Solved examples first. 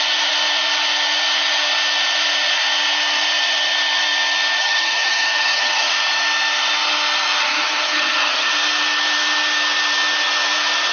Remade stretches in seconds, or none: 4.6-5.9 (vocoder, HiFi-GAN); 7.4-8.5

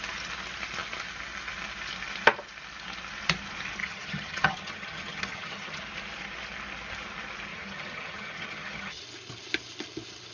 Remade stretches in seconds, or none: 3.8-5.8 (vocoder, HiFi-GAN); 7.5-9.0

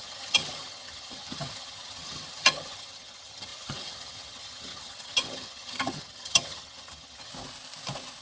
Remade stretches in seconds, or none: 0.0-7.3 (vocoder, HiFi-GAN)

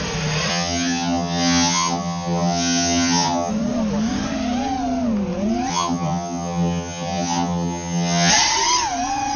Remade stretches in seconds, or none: 0.5-3.5 (vocoder, HiFi-GAN); 5.7-8.3

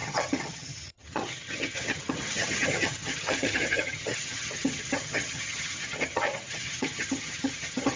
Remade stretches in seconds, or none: 0.0-8.0 (vocoder, HiFi-GAN)